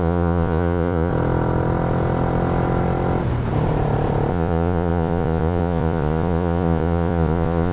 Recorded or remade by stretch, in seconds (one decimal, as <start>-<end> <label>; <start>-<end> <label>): 0.0-1.1 remade; 1.1-4.3 recorded; 4.3-7.7 remade